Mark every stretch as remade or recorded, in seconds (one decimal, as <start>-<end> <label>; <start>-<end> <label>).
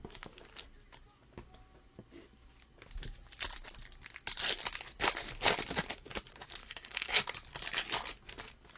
0.0-6.6 recorded; 6.6-7.2 remade; 7.2-8.8 recorded